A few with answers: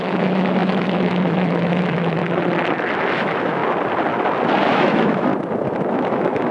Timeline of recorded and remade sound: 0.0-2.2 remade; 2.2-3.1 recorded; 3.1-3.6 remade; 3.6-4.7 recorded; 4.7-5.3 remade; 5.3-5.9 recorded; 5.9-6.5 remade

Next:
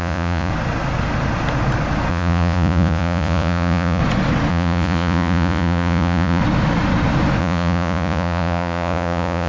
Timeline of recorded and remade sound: 0.0-0.5 remade; 0.5-2.1 recorded; 2.1-4.0 remade; 4.0-4.5 recorded; 4.5-6.4 remade; 6.4-7.4 recorded; 7.4-9.5 remade

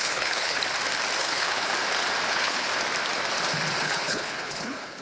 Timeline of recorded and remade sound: 0.0-0.6 remade; 0.6-1.2 recorded; 1.2-1.7 remade; 1.7-2.3 recorded; 2.3-2.7 remade; 2.7-3.8 recorded; 3.8-5.0 remade

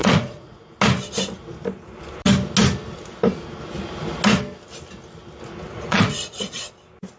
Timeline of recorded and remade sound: 0.0-0.7 remade; 0.7-5.7 recorded; 5.7-6.6 remade; 6.6-7.2 recorded